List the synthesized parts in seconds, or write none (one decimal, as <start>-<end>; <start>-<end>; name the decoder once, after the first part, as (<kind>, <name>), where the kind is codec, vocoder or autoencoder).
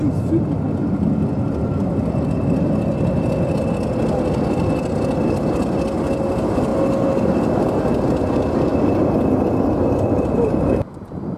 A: none